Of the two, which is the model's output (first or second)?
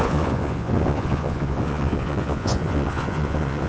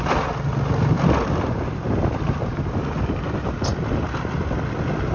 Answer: first